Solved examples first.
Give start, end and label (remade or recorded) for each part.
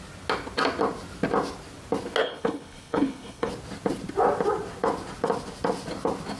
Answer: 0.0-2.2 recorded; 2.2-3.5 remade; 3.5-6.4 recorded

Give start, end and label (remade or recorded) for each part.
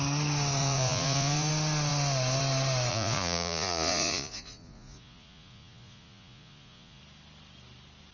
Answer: 0.0-0.6 recorded; 0.6-1.5 remade; 1.5-2.9 recorded; 2.9-7.0 remade; 7.0-8.1 recorded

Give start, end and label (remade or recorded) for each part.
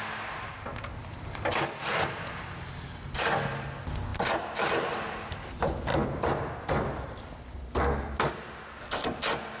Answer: 0.0-1.0 recorded; 1.0-1.9 remade; 1.9-5.9 recorded; 5.9-7.6 remade; 7.6-9.6 recorded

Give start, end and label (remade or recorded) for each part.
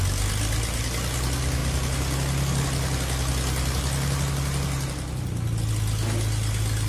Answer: 0.0-6.9 recorded